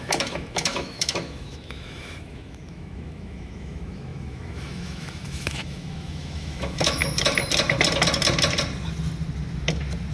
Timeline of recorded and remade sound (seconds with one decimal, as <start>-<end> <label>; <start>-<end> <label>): 0.0-7.0 remade; 7.0-10.1 recorded